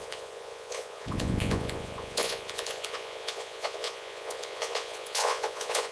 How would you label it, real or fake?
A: fake